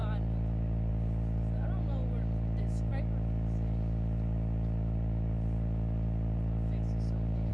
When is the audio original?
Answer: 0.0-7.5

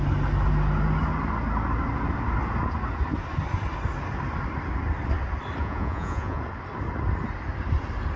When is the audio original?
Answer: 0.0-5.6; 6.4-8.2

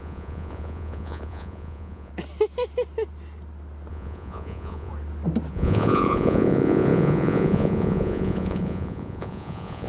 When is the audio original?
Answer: 2.1-3.9; 4.9-5.5

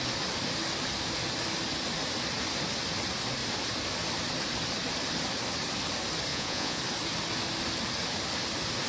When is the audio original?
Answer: 0.0-6.3; 6.8-8.9

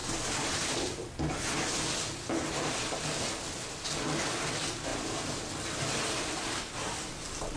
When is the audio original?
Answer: 0.0-7.6

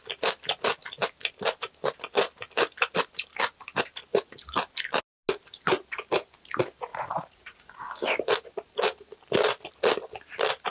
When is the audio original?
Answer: 0.0-6.9; 7.9-10.7

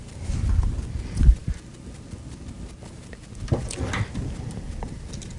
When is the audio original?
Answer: 0.0-5.4

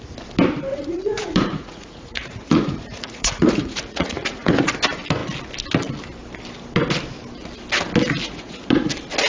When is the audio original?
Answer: 0.0-0.7; 4.6-8.2; 8.9-9.3